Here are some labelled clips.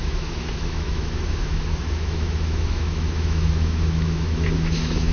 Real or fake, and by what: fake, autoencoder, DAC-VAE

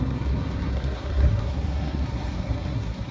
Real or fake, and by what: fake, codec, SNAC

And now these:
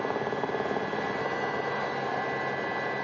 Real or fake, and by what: real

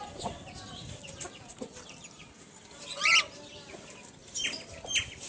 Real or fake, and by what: real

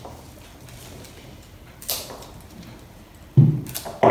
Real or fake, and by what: real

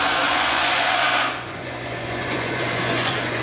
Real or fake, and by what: fake, vocoder, Vocos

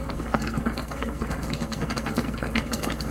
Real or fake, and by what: fake, codec, SNAC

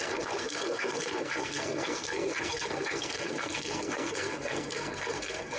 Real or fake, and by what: fake, codec, SNAC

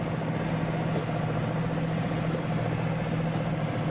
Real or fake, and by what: real